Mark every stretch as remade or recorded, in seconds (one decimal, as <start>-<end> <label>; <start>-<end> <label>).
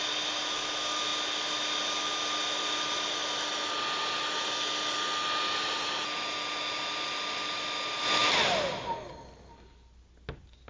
0.0-10.7 recorded